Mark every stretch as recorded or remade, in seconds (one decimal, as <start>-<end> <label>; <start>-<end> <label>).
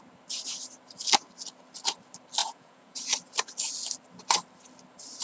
0.0-2.4 recorded; 2.4-3.0 remade; 3.0-5.2 recorded